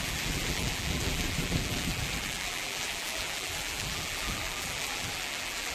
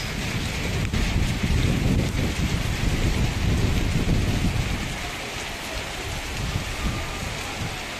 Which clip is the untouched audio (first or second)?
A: second